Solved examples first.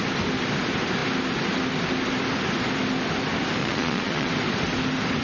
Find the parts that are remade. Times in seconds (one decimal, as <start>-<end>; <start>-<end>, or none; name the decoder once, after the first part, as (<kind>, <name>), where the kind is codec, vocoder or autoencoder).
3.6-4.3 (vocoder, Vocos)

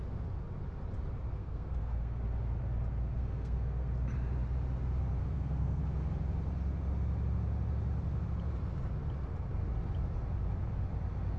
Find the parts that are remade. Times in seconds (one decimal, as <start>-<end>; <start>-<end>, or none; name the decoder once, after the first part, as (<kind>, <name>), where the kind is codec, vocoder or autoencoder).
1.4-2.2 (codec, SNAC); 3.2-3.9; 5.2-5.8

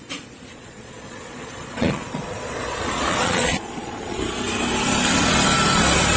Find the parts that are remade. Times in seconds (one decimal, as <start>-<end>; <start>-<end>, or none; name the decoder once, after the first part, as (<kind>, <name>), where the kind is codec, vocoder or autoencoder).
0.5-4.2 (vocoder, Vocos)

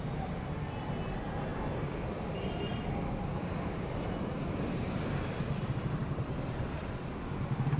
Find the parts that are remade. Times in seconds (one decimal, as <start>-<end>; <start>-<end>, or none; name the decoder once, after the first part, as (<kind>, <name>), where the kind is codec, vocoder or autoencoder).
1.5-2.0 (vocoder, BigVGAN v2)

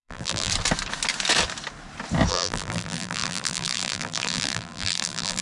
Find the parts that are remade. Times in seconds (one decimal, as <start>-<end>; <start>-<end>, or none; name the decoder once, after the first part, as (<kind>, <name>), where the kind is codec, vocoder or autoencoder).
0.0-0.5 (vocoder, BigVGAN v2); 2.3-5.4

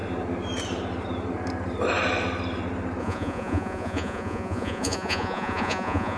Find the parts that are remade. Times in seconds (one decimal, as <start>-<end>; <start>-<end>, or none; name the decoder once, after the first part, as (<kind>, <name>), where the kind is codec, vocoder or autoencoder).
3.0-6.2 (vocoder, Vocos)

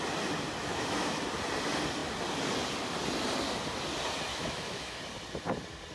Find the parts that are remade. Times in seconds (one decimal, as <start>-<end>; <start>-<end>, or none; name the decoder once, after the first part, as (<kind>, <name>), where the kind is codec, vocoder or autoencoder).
0.6-1.2 (autoencoder, DAC-VAE); 4.3-5.0

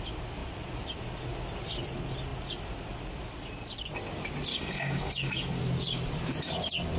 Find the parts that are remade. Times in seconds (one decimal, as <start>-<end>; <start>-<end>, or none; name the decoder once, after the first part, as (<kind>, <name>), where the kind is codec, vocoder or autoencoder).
4.5-5.6 (codec, DAC)